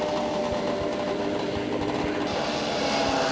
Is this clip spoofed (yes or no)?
no